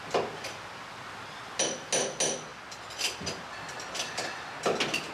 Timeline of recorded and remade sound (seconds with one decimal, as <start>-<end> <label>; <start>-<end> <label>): 0.0-5.1 recorded